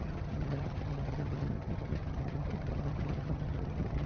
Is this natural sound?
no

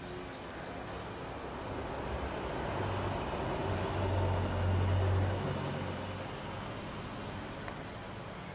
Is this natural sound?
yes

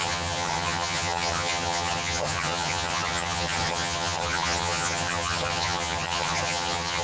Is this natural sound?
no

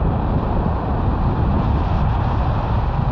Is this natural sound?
yes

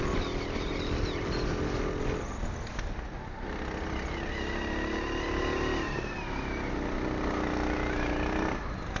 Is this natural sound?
yes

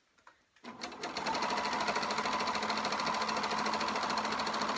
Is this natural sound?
yes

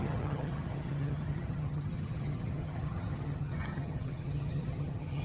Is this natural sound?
no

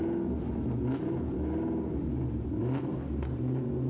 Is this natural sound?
yes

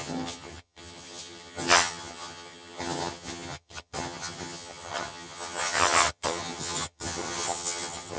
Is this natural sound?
no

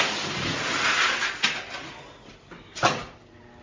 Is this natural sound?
yes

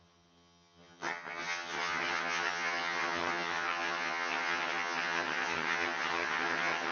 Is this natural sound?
no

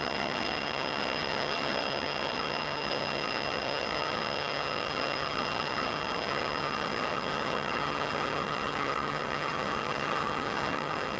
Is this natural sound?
no